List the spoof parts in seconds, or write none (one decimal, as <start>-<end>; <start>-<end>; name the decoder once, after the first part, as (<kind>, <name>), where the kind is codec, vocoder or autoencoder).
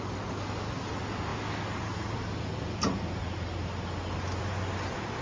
none